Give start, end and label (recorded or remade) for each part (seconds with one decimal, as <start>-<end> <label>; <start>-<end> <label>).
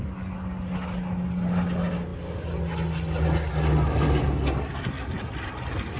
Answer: 0.0-6.0 recorded